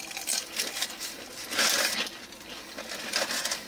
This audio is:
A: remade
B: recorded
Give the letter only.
B